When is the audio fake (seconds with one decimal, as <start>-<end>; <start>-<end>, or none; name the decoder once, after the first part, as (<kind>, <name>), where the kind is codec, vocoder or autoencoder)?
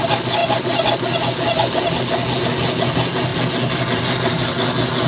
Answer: none